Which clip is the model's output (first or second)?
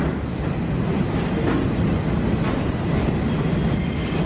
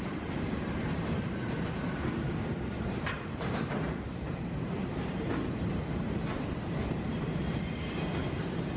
second